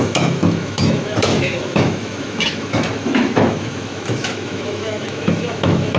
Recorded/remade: remade